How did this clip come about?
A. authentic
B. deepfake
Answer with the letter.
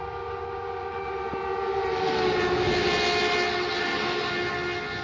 A